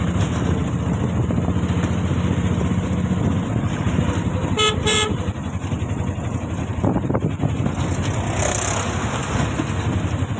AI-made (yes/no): no